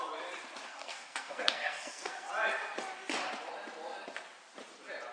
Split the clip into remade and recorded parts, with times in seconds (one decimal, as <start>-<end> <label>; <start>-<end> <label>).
0.0-0.7 recorded; 0.7-2.3 remade; 2.3-5.1 recorded